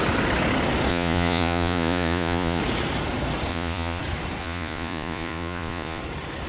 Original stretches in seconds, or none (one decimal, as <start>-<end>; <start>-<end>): 0.0-0.9; 2.6-3.5; 4.0-4.4; 6.0-6.5